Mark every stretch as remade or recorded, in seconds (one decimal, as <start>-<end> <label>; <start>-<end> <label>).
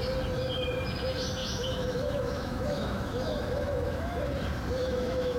0.0-1.4 recorded; 1.4-4.2 remade; 4.2-4.8 recorded; 4.8-5.4 remade